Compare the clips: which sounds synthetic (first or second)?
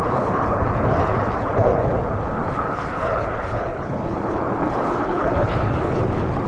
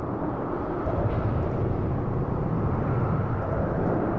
first